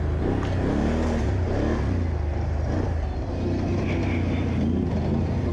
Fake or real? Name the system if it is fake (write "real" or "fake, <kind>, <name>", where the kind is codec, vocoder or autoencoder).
real